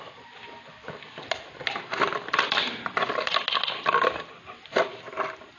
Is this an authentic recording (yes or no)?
yes